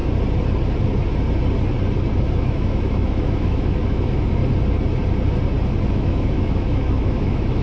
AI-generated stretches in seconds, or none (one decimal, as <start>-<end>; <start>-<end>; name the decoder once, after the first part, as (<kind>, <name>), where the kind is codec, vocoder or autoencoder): 2.4-4.4 (autoencoder, DAC-VAE); 5.9-7.6